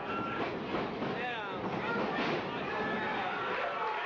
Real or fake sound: real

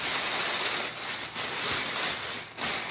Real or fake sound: real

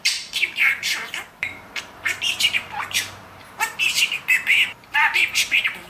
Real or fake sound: fake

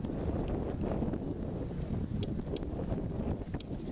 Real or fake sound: real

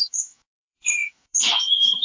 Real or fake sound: fake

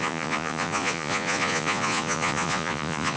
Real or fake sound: fake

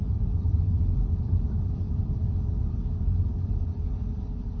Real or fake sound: fake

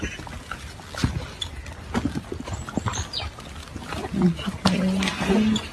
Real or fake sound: real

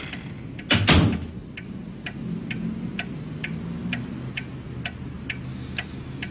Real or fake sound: real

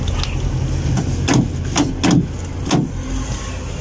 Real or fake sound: real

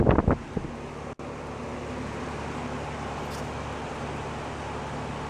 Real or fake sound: real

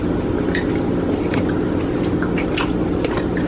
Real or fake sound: real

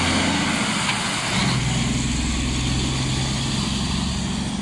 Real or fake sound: real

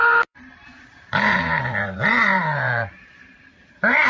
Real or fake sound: fake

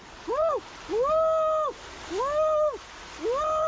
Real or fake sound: real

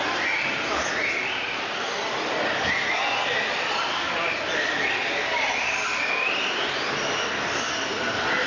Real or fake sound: real